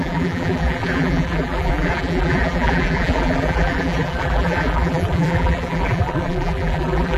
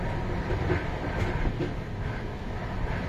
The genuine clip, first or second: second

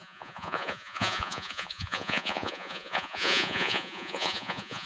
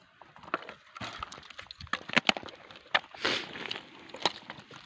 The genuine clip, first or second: second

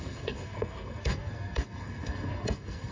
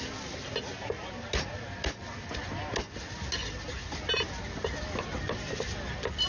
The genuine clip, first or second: second